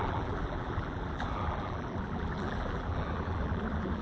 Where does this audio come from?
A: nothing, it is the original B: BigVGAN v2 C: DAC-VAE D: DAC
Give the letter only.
B